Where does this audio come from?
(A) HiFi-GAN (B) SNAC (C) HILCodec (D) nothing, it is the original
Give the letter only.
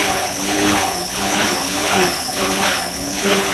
C